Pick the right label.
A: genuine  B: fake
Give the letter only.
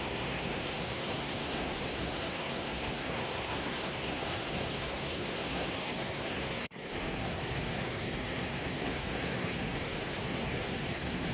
B